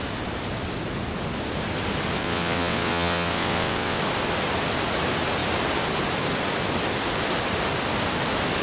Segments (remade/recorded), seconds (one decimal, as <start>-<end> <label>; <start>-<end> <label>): 0.0-2.2 recorded; 2.2-4.0 remade; 4.0-8.6 recorded